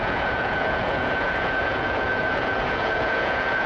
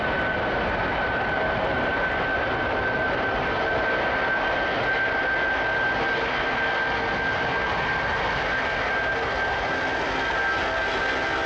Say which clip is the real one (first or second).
second